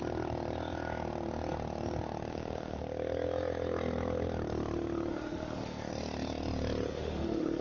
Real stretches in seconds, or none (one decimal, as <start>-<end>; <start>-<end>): 0.0-2.3; 2.8-5.1; 5.9-6.9